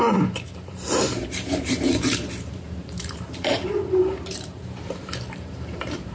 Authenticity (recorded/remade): remade